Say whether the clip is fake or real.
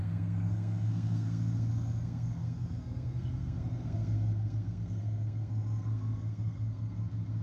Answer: fake